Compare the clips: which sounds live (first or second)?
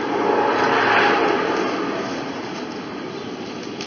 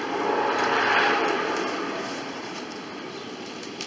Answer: first